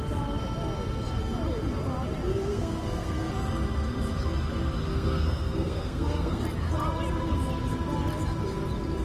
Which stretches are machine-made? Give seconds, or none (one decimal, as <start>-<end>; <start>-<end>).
2.3-3.3; 4.9-6.4